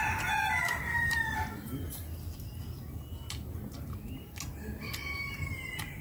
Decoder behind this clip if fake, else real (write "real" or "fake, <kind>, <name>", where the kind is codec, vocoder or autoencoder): real